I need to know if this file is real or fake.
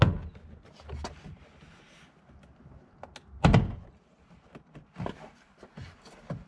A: real